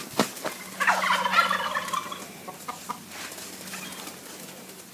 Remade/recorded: recorded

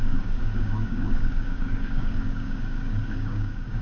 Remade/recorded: remade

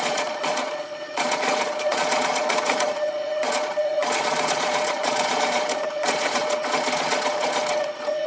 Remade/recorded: remade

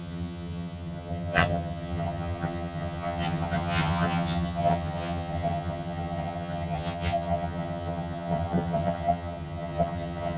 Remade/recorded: remade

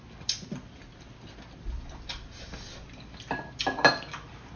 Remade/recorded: recorded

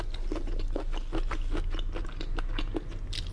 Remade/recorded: recorded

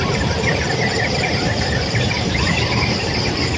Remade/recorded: remade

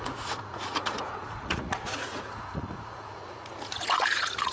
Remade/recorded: remade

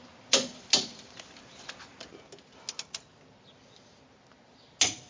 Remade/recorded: recorded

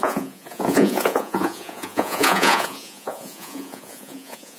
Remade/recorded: remade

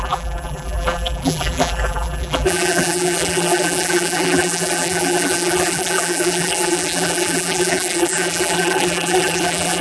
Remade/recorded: remade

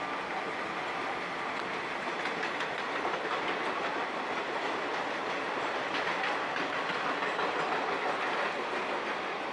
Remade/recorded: recorded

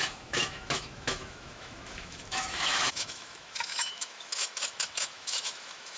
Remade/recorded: remade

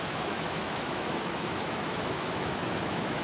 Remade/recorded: remade